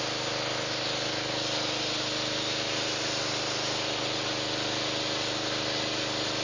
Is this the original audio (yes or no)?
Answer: yes